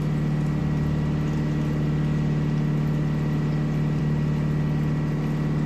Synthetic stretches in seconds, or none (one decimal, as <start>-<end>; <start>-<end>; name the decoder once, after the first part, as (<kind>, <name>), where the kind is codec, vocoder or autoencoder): none